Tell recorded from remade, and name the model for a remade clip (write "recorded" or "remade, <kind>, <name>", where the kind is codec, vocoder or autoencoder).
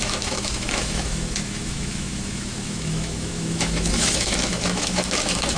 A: remade, autoencoder, DAC-VAE